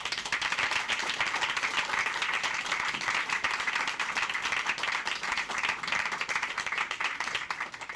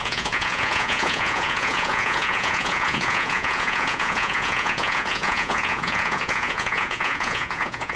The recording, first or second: first